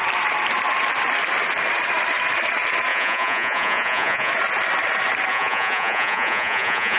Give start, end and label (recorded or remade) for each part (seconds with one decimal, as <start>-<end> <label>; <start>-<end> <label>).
0.0-2.9 recorded; 2.9-4.3 remade; 4.3-5.3 recorded; 5.3-7.0 remade